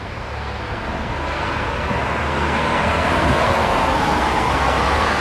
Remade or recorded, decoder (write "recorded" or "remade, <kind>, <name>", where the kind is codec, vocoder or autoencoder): remade, codec, SNAC